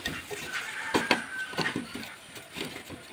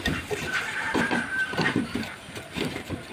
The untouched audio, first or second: first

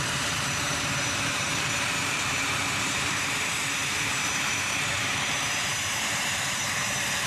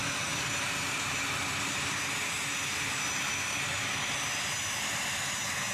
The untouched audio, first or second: second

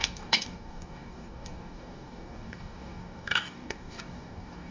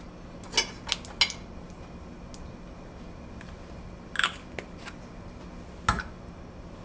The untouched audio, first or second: second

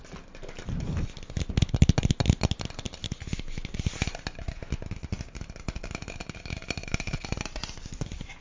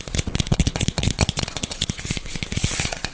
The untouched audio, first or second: first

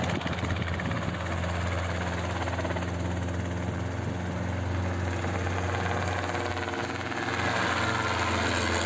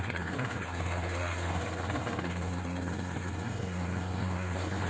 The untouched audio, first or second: first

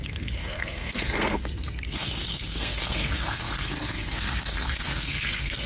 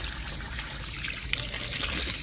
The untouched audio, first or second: second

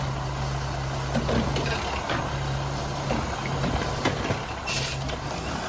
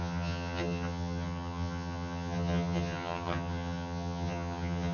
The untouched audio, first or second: first